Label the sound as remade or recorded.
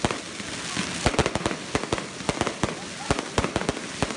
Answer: recorded